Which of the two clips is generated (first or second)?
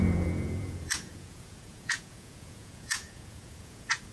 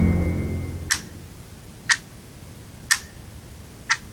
first